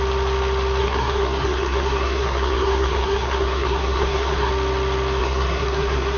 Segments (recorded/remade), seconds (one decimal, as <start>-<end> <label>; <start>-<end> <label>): 0.0-0.8 recorded; 0.8-4.5 remade; 4.5-5.2 recorded; 5.2-6.2 remade